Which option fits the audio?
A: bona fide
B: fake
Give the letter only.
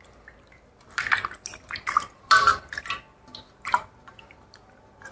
A